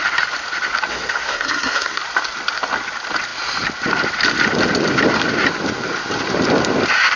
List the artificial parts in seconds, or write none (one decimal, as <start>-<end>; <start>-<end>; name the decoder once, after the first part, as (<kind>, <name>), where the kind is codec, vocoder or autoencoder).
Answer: 0.9-2.0 (codec, SNAC)